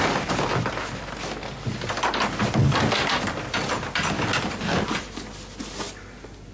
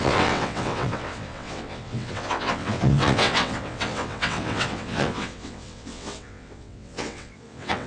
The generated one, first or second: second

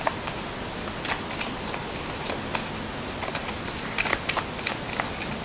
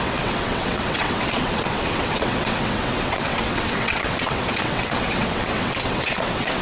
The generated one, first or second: second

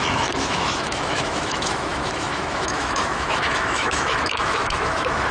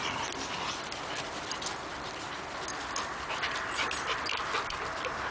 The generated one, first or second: first